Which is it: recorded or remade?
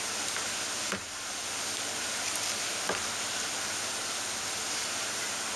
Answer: recorded